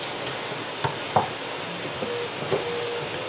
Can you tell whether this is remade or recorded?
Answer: recorded